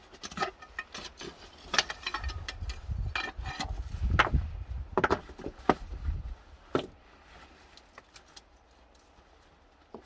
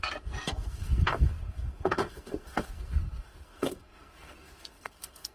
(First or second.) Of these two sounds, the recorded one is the first